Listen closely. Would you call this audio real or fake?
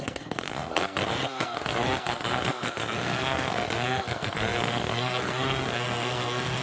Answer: fake